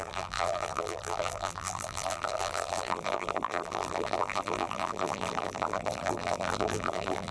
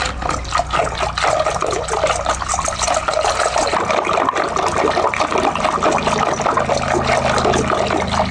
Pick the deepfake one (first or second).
first